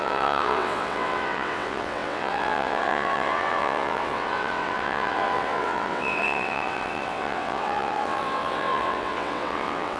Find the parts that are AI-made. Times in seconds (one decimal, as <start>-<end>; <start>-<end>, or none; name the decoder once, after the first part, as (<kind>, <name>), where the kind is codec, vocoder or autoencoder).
0.0-10.0 (vocoder, WaveNeXt)